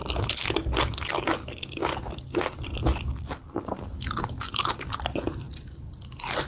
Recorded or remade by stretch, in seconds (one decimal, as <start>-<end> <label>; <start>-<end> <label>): 0.0-6.5 recorded